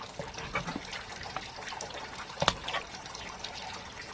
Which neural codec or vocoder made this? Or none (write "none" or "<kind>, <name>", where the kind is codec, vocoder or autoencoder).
none